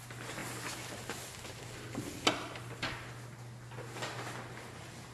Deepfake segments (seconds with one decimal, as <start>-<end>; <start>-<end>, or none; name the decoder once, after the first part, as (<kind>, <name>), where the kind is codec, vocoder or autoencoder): none